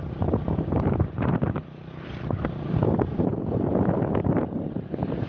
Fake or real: fake